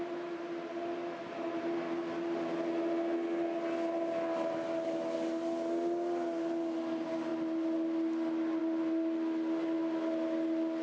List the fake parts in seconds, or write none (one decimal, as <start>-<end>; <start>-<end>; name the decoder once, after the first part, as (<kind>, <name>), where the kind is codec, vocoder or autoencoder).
none